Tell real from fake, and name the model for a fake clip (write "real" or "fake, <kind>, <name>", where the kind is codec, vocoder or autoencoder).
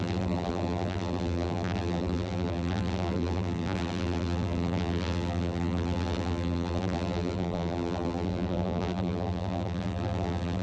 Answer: fake, vocoder, BigVGAN v2